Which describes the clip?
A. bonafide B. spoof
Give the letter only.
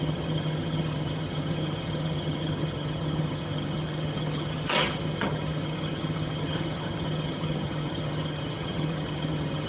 B